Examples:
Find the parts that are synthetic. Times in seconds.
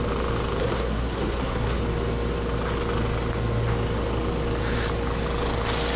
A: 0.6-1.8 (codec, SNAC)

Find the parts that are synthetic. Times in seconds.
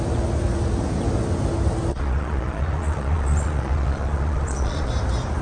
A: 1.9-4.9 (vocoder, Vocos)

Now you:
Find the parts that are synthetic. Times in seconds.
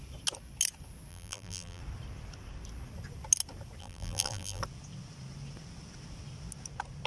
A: 1.1-1.8 (vocoder, BigVGAN v2); 3.8-4.6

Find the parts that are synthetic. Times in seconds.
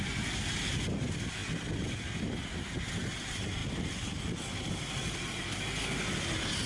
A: 3.6-5.5 (vocoder, BigVGAN v2)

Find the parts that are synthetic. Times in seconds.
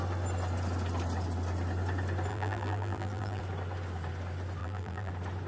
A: 2.3-3.4 (vocoder, BigVGAN v2); 4.6-5.1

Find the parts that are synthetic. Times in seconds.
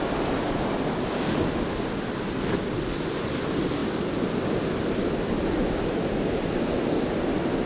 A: none